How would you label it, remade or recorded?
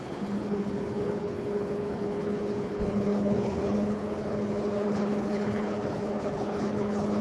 remade